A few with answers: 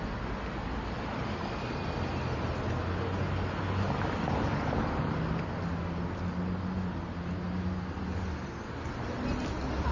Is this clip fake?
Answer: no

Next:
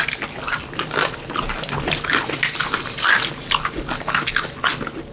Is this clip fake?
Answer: no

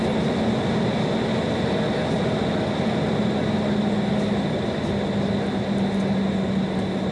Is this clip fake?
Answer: no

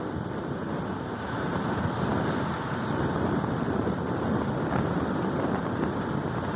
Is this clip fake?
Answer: no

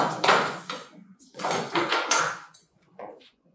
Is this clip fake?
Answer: yes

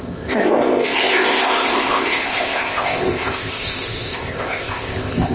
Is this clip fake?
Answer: yes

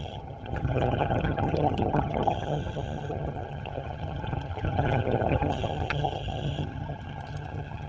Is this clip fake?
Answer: yes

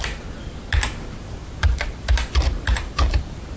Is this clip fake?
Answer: yes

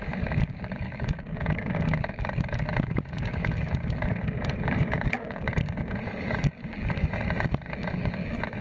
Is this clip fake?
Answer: yes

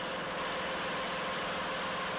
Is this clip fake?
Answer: no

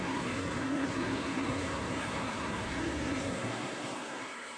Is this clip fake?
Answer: yes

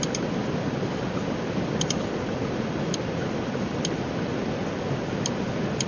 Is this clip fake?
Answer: no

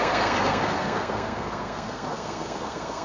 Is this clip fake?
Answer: yes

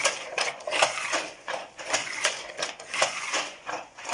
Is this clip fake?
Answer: yes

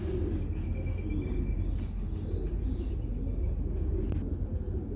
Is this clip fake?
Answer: no